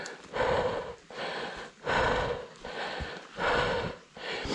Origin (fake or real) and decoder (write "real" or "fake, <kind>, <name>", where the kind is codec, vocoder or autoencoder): real